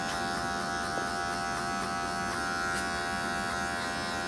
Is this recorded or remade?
recorded